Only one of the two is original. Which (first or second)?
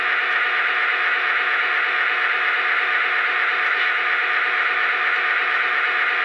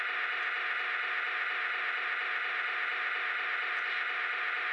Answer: second